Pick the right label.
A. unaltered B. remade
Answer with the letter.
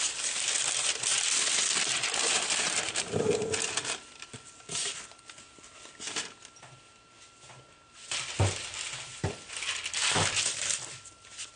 A